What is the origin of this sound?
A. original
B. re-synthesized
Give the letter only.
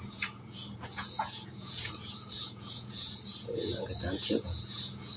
B